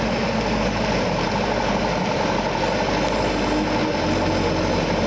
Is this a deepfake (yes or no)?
no